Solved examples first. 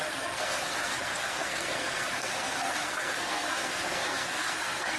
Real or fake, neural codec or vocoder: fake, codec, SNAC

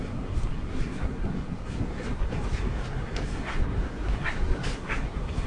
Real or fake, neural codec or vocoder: fake, codec, SNAC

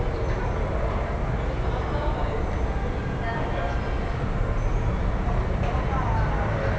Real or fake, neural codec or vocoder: real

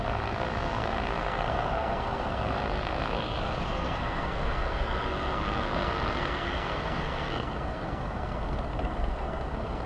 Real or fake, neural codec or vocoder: fake, codec, SNAC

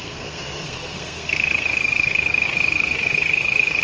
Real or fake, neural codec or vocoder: fake, codec, SNAC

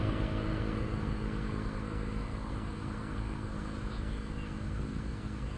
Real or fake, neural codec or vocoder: fake, codec, SNAC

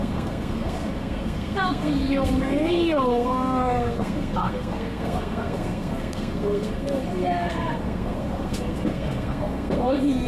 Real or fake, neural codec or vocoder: fake, codec, SNAC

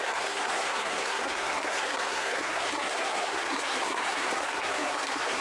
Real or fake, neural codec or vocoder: fake, codec, SNAC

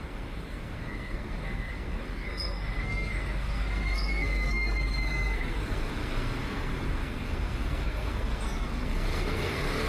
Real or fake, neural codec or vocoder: fake, codec, SNAC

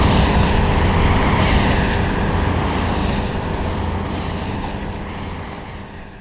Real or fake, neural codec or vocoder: real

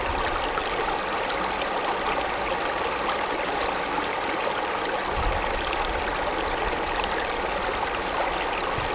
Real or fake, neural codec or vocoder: real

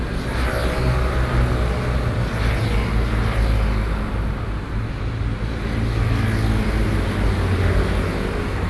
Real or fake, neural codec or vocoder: real